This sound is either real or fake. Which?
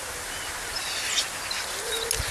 real